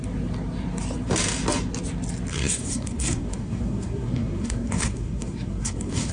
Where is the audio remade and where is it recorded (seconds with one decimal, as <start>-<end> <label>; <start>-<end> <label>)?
0.0-2.3 recorded; 2.3-6.1 remade